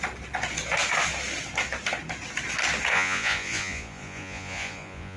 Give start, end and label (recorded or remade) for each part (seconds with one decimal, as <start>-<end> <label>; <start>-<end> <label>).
0.0-2.9 recorded; 2.9-5.2 remade